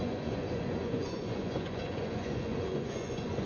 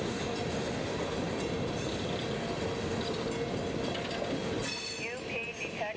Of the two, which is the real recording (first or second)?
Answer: second